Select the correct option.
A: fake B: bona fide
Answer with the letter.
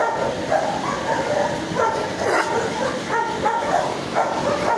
B